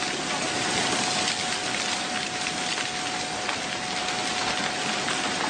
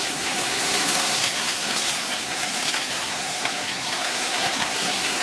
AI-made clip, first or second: second